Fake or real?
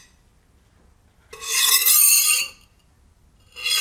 real